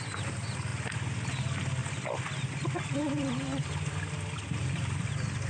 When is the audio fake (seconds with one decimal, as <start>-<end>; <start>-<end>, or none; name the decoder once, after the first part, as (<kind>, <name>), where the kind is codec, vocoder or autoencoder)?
none